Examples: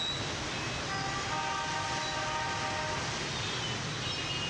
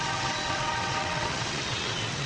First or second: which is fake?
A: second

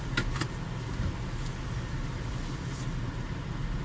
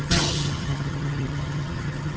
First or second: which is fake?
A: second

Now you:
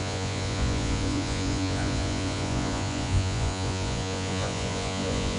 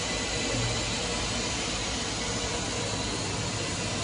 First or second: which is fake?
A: first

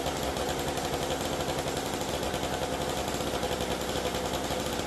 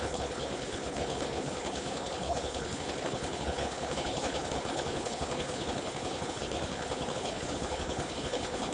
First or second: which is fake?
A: second